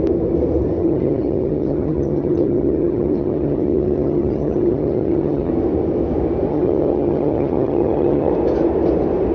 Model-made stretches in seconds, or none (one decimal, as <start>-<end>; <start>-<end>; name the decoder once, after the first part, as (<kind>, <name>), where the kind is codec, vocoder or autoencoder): 0.8-5.5 (vocoder, HiFi-GAN); 6.5-8.3